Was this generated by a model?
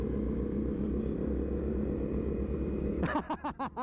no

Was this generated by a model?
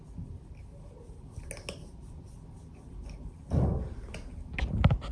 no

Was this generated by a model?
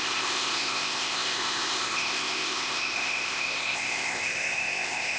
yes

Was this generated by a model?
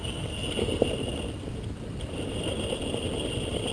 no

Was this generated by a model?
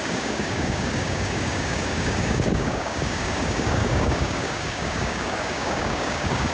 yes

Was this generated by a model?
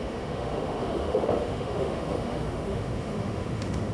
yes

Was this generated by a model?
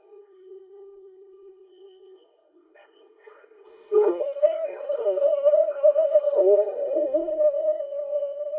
yes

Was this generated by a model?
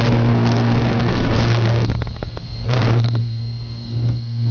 yes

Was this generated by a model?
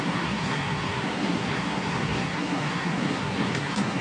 yes